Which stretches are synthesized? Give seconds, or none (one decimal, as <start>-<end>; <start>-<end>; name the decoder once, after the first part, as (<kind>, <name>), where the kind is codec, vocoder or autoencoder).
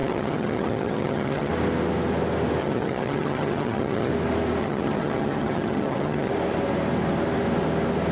0.0-1.5 (vocoder, HiFi-GAN); 2.6-4.1; 4.6-6.3